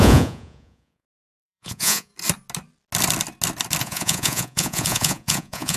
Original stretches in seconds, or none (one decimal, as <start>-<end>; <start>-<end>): 2.1-3.8